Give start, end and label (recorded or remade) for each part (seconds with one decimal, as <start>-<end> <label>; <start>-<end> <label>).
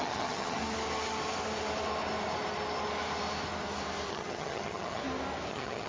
0.0-0.6 remade; 0.6-4.1 recorded; 4.1-5.0 remade; 5.0-5.5 recorded; 5.5-5.9 remade